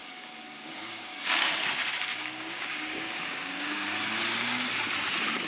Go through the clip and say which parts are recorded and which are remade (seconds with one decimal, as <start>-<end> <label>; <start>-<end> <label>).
0.0-1.5 remade; 1.5-2.1 recorded; 2.1-4.2 remade; 4.2-5.5 recorded